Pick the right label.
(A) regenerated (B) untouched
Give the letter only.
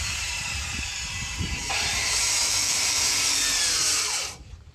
A